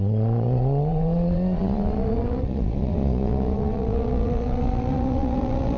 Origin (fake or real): fake